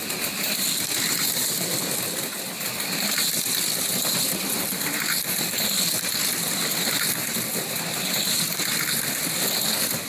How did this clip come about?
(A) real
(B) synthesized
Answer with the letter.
A